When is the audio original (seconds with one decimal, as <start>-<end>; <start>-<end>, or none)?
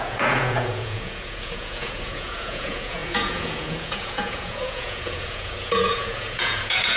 none